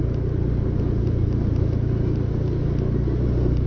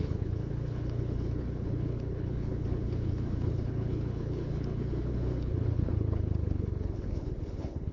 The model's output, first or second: second